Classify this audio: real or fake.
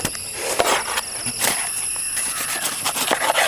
real